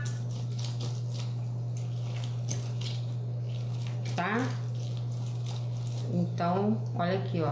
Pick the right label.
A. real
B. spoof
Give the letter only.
A